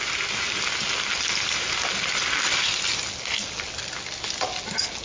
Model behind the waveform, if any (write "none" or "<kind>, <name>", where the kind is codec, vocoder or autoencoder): none